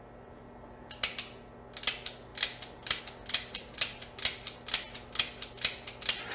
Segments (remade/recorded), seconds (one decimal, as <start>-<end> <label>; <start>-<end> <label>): 0.0-6.3 recorded